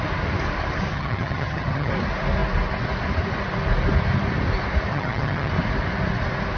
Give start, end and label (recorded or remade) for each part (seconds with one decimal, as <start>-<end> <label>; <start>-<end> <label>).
0.0-0.9 recorded; 0.9-1.9 remade; 1.9-4.9 recorded; 4.9-5.5 remade; 5.5-6.6 recorded